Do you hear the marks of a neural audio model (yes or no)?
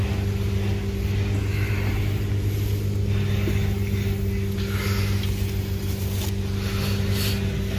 no